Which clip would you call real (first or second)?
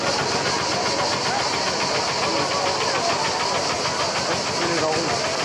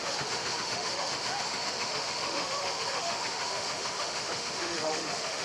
first